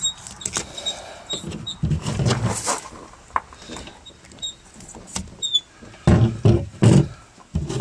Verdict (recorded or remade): recorded